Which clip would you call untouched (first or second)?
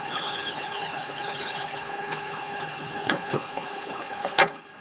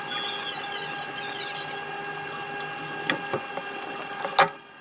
second